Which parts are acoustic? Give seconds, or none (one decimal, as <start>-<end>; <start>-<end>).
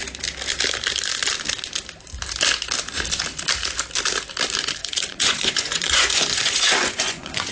0.0-4.8